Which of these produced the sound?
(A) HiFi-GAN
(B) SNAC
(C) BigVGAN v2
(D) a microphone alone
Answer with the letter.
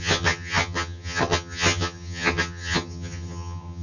A